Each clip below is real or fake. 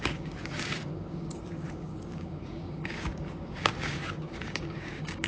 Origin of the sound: fake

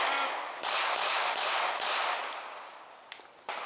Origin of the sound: real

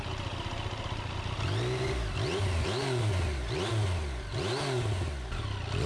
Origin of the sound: real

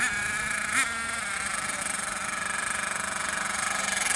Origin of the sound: real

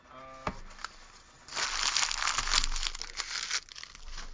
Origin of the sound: real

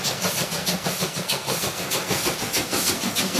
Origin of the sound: fake